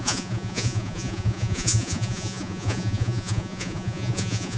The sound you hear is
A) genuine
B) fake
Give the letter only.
B